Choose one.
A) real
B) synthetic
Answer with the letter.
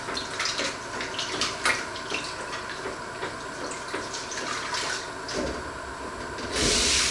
A